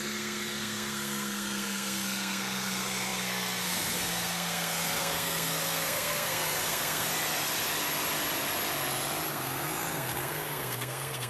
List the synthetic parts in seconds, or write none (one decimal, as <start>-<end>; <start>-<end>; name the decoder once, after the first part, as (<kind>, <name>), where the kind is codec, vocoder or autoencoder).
0.0-7.1 (codec, SNAC); 9.3-11.3